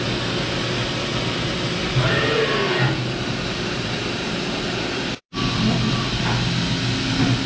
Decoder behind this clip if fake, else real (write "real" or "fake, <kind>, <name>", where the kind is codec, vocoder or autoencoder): real